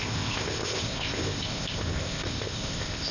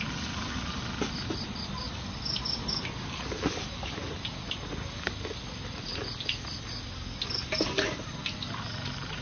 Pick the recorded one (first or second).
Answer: second